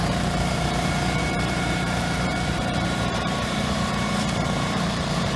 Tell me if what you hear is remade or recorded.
remade